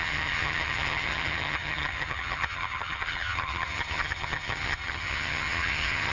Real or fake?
fake